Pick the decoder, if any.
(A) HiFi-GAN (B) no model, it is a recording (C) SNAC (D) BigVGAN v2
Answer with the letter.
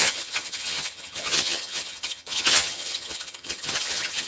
A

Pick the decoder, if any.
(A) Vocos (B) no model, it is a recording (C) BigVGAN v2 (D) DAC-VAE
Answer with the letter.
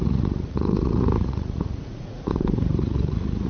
A